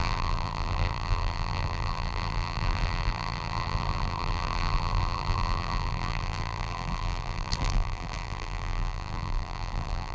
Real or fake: fake